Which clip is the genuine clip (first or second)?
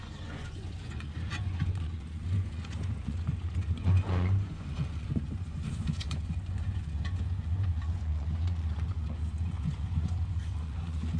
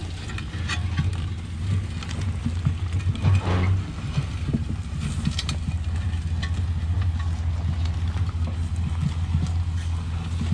second